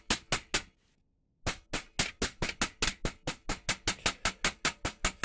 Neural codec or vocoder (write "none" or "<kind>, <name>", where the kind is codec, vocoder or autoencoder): none